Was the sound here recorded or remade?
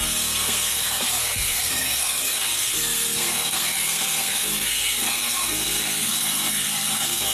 remade